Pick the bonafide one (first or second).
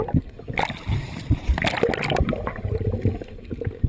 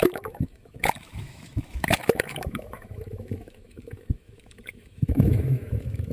first